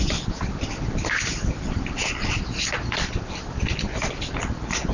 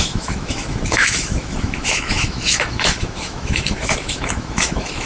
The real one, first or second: first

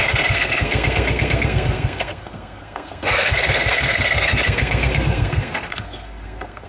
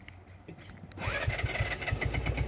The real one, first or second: second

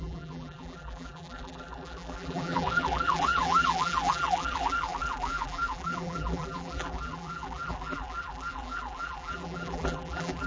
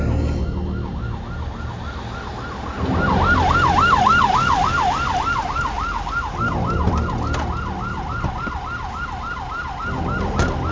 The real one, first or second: second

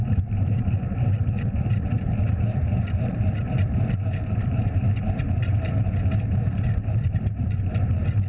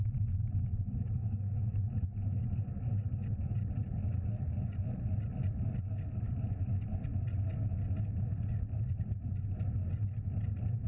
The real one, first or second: second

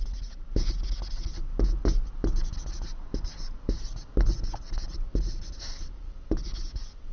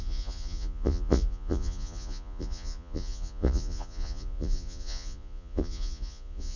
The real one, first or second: first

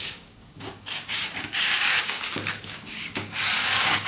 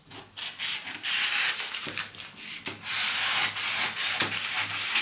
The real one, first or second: second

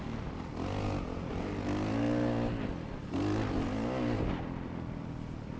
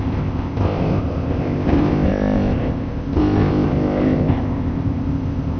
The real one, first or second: first